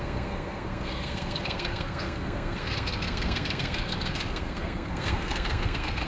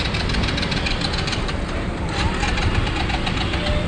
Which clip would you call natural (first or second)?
second